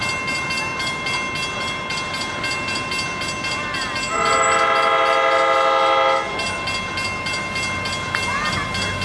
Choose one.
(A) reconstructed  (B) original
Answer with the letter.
B